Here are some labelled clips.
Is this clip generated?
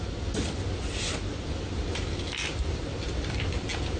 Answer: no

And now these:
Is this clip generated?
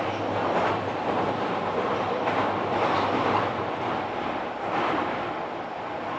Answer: no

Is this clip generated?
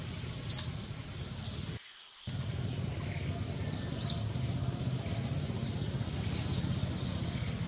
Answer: no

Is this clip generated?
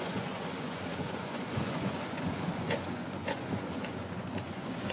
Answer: yes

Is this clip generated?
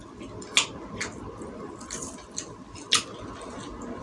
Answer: no